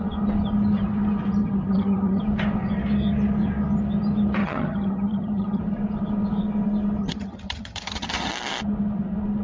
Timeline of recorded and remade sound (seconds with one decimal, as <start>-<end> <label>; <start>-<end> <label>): 0.0-1.4 recorded; 1.4-2.2 remade; 2.2-4.4 recorded; 4.4-5.6 remade; 5.6-7.0 recorded; 7.0-8.3 remade; 8.3-9.4 recorded